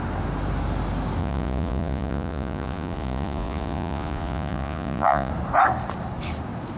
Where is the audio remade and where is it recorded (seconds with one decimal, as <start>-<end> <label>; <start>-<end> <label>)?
0.0-1.2 recorded; 1.2-5.3 remade; 5.3-6.8 recorded